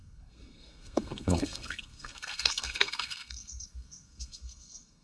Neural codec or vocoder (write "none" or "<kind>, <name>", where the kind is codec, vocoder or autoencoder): codec, SNAC